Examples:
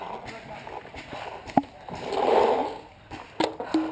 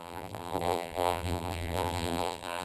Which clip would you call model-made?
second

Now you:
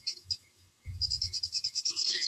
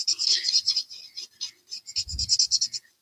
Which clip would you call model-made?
first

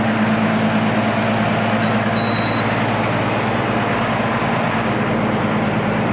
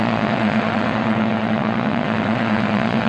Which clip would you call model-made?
second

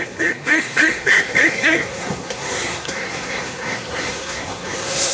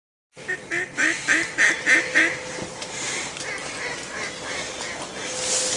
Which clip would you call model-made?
first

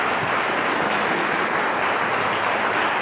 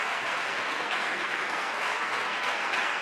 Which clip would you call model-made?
second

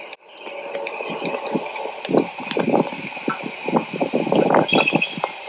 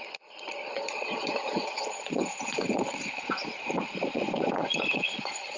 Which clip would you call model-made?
second